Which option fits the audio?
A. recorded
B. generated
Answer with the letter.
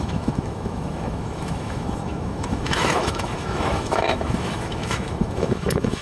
B